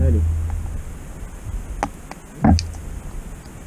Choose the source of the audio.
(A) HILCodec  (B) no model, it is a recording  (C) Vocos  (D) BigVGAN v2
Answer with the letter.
B